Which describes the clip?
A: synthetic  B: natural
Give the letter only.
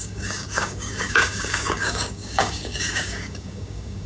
A